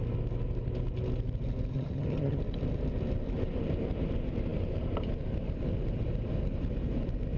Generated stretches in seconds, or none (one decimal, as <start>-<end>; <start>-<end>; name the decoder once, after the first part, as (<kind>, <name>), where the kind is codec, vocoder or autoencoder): 1.7-2.4 (vocoder, HiFi-GAN)